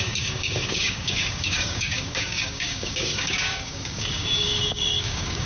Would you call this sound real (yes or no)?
no